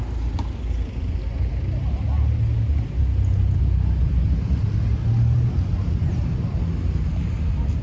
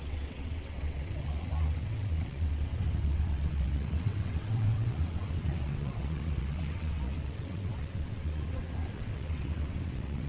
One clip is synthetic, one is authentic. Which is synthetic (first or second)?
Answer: second